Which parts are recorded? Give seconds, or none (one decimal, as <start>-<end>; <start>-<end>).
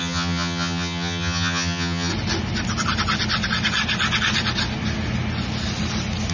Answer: 2.1-6.3